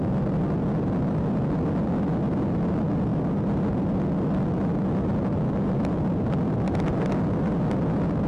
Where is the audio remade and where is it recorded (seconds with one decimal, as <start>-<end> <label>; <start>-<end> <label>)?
0.0-8.3 recorded